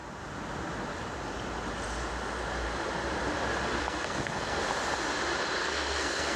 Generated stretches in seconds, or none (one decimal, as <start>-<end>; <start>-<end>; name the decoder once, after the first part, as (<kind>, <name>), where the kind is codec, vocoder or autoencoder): 3.8-4.6 (codec, SNAC); 5.6-6.4